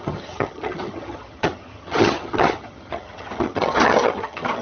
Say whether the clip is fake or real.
fake